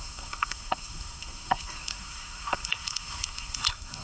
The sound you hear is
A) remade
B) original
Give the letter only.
A